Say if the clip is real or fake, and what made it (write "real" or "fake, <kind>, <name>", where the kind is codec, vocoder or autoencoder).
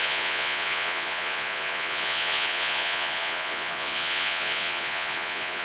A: fake, vocoder, Vocos